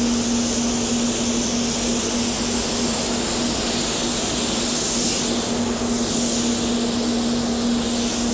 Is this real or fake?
real